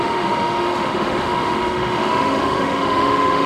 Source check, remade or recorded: remade